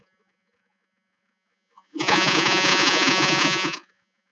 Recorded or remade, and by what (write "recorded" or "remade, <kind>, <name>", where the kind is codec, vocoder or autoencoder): remade, vocoder, Vocos